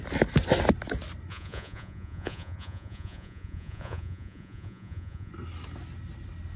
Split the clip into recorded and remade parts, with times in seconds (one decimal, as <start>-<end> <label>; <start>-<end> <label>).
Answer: 0.0-1.3 recorded; 1.3-5.3 remade; 5.3-6.6 recorded